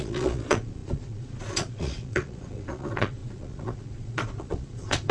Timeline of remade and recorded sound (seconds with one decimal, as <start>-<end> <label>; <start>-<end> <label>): 0.0-5.1 remade